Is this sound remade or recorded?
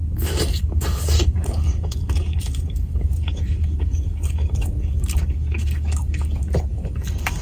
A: remade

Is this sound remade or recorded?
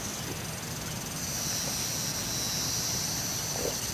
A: recorded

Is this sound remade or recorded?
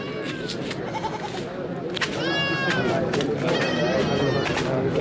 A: recorded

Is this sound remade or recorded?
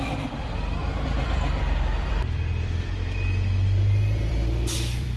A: remade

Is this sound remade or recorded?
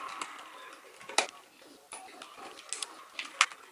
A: recorded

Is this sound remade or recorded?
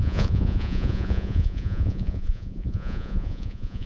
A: remade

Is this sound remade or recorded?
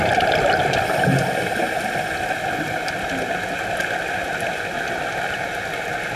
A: recorded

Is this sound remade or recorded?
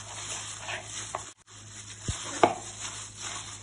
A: recorded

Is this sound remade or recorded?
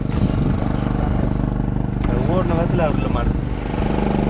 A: recorded